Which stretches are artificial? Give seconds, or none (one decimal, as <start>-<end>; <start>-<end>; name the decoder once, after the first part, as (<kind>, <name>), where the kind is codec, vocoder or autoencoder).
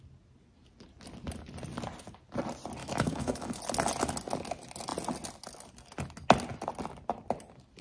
2.8-3.6 (autoencoder, DAC-VAE)